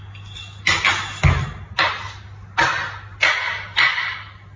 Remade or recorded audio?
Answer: recorded